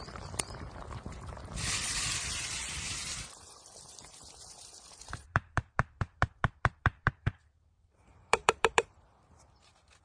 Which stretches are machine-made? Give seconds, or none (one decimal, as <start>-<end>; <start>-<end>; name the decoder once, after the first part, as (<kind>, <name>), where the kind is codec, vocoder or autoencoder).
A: 0.0-10.0 (vocoder, BigVGAN v2)